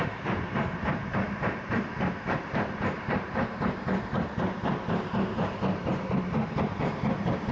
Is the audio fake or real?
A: fake